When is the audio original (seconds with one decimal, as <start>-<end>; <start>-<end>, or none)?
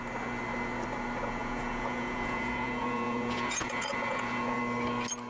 0.0-1.4; 4.6-5.3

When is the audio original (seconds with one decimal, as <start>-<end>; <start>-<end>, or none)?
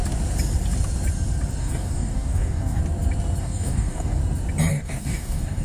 0.0-1.6; 2.8-3.4; 4.2-4.7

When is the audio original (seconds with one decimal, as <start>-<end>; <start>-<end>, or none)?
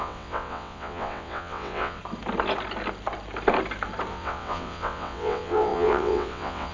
2.0-4.1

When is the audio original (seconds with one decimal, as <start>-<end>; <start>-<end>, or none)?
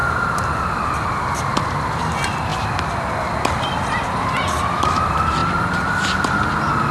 0.9-6.9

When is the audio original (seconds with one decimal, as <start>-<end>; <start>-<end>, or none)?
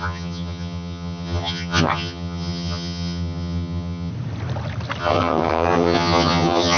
4.1-5.0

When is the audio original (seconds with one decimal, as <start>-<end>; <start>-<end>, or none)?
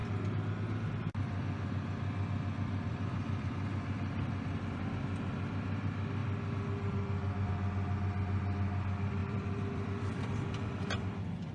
0.0-2.9; 3.5-9.2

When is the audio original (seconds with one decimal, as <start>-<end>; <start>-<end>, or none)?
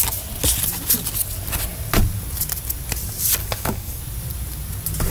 0.0-3.4; 4.0-5.1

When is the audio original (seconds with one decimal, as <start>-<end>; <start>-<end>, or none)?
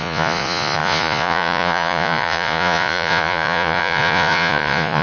none